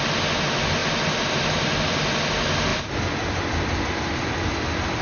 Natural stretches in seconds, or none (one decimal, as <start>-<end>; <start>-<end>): 0.0-2.7; 4.2-5.0